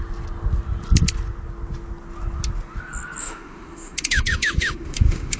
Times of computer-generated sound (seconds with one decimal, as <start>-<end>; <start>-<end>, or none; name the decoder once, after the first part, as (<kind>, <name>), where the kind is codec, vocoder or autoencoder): 3.2-5.4 (autoencoder, DAC-VAE)